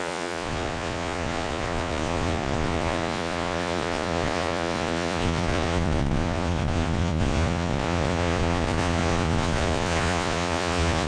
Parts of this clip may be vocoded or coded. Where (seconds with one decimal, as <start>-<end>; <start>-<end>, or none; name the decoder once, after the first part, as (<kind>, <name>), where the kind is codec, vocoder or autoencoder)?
0.0-11.1 (vocoder, Vocos)